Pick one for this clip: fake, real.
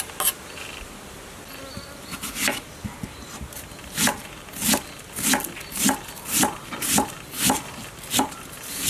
real